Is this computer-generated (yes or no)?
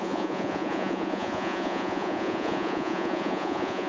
yes